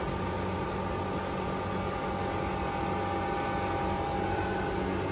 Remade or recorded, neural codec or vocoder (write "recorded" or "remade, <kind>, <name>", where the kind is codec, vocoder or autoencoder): recorded